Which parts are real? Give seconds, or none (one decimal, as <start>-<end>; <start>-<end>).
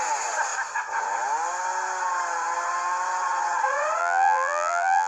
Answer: 0.0-4.0